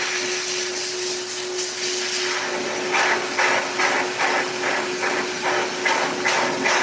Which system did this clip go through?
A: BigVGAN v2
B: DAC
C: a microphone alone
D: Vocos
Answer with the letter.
C